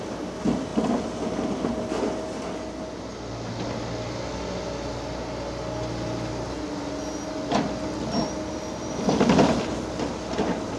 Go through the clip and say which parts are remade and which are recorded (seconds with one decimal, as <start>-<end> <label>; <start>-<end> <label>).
0.0-10.8 recorded